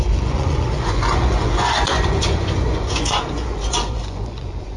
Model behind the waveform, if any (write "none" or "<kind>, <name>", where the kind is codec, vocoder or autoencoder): vocoder, Vocos